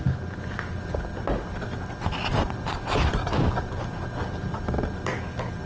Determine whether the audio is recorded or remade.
recorded